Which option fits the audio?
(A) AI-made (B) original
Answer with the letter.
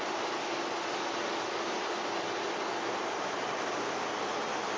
B